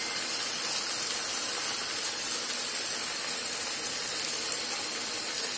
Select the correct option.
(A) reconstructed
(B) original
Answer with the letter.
B